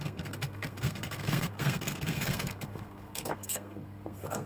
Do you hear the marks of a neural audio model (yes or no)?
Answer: yes